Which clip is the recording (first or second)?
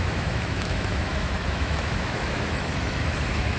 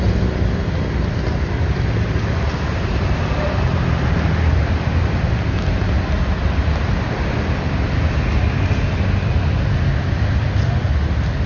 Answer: second